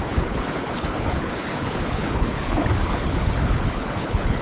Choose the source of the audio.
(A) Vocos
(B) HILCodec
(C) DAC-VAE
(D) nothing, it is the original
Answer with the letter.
B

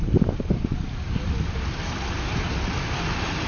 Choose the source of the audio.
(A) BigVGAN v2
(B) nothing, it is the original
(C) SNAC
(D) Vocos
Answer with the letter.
B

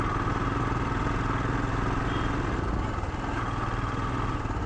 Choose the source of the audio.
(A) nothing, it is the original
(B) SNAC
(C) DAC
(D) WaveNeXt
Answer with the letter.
A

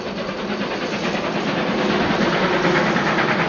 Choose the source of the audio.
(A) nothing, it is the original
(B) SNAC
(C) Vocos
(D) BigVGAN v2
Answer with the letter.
A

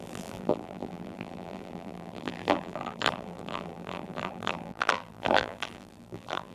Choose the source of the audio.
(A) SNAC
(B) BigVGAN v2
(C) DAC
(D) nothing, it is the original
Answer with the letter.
B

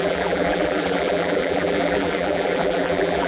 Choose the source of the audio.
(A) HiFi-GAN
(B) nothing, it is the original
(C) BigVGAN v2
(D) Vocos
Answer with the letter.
C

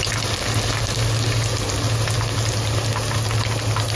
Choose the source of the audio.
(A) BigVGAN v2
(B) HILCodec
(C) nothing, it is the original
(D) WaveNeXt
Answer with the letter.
C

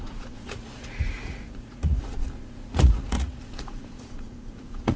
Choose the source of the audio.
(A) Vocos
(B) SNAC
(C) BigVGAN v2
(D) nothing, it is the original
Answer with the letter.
A